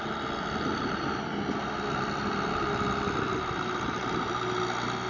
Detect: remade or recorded recorded